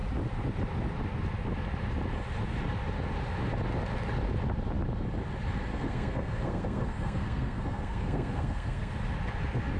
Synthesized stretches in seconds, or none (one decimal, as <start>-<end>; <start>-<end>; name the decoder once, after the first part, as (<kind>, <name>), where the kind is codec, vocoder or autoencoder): 5.7-8.9 (codec, SNAC)